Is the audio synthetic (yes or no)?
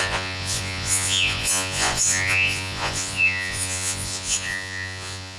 yes